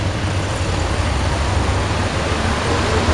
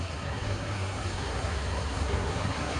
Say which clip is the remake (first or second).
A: second